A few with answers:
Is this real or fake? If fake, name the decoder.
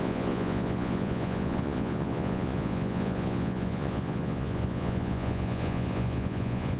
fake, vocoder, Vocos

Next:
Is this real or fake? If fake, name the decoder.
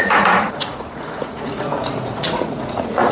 fake, vocoder, Vocos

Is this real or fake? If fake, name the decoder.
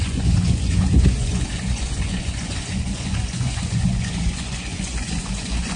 fake, vocoder, Vocos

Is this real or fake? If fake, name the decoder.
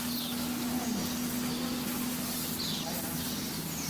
real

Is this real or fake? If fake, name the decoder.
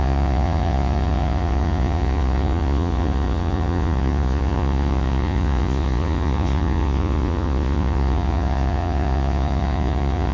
fake, vocoder, Vocos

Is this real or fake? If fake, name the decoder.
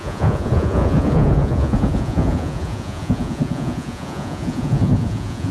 fake, vocoder, Vocos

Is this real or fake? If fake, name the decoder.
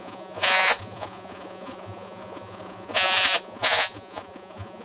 fake, vocoder, Vocos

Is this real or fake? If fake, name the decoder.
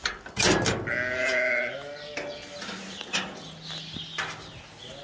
real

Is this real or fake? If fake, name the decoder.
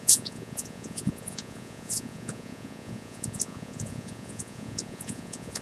fake, vocoder, Vocos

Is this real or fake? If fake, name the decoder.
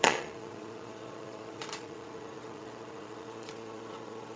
fake, vocoder, Vocos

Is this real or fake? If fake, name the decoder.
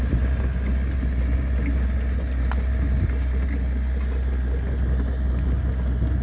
real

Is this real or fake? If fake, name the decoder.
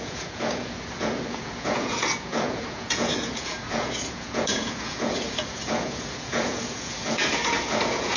fake, vocoder, Vocos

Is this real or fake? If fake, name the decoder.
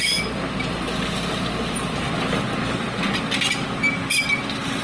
real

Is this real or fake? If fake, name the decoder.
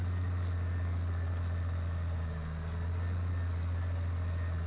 real